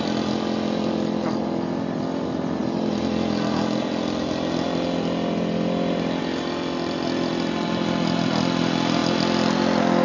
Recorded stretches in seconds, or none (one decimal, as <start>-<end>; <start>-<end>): 0.0-10.0